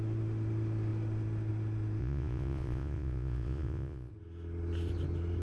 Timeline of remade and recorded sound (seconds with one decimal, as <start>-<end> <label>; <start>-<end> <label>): 0.0-2.0 recorded; 2.0-4.1 remade; 4.1-5.4 recorded